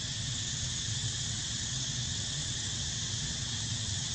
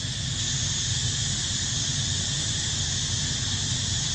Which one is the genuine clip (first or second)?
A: second